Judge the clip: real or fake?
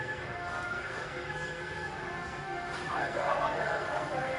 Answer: fake